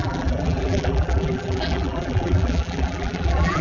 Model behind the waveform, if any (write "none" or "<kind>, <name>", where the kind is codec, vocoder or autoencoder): vocoder, BigVGAN v2